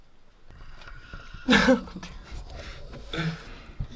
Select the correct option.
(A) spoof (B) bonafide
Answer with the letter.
B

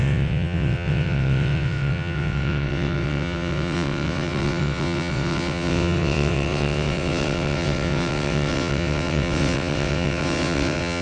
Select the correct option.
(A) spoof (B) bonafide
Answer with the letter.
A